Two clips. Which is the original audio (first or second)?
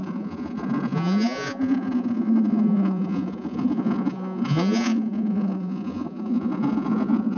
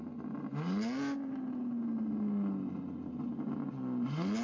second